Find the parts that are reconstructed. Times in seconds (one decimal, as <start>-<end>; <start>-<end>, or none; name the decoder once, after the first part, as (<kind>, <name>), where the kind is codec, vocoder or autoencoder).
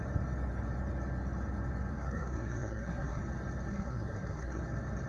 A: 1.9-3.2 (codec, SNAC); 3.7-4.6